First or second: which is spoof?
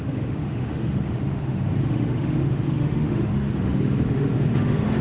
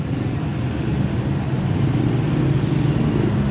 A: first